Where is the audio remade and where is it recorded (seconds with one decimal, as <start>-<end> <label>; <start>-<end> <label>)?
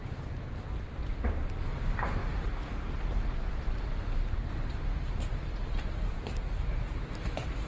0.0-0.8 recorded; 0.8-7.7 remade